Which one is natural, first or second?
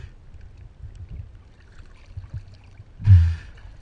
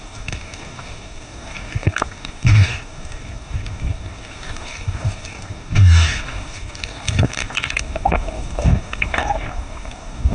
first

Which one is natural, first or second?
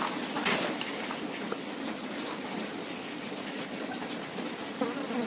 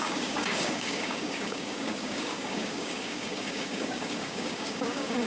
first